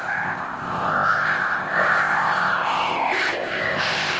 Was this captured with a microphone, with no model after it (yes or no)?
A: no